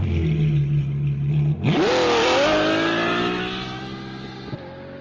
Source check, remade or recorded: recorded